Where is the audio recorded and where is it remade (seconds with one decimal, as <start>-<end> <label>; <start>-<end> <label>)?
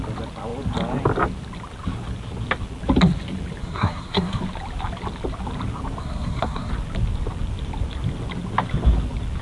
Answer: 0.0-3.6 recorded; 3.6-4.4 remade; 4.4-6.0 recorded; 6.0-6.7 remade; 6.7-9.4 recorded